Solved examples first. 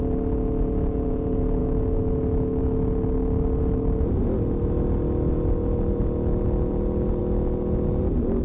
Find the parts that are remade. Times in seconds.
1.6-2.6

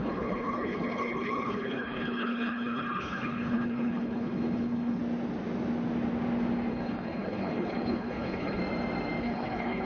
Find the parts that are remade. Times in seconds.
0.0-5.0; 6.7-8.6; 9.2-9.9

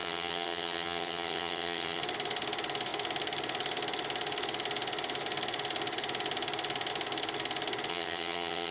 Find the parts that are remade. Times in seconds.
0.0-2.0; 7.9-8.7

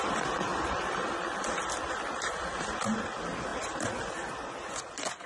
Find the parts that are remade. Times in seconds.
0.5-2.3

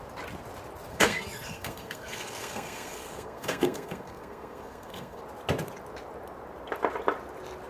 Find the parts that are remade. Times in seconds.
0.9-5.2